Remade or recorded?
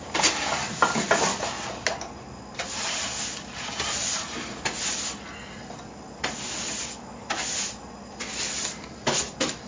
recorded